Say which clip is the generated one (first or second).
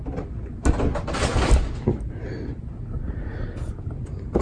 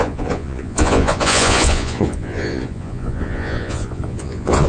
second